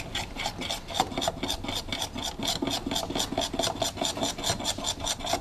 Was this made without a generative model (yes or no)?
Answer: yes